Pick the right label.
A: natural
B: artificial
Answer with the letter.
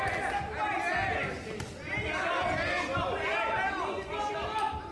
A